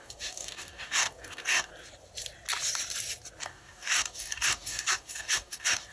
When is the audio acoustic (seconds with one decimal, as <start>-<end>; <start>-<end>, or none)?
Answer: 1.7-3.4